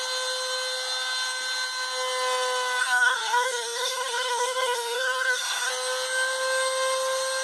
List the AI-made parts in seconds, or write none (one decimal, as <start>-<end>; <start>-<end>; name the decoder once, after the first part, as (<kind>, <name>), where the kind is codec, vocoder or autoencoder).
2.8-5.7 (codec, SNAC)